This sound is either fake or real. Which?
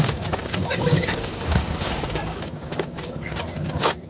fake